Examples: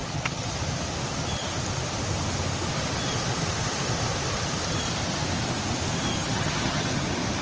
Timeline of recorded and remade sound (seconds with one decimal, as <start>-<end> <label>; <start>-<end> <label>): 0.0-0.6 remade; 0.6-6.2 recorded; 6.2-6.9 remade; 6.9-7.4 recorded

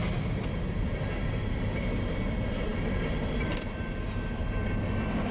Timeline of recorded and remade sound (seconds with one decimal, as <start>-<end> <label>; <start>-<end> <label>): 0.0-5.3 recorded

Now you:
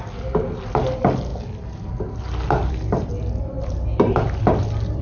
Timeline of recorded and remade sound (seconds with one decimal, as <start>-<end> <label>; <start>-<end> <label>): 0.0-5.0 recorded